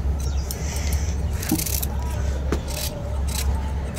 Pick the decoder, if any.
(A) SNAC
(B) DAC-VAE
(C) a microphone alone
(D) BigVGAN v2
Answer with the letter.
C